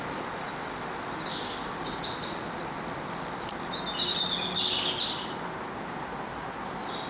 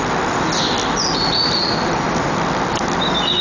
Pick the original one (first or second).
first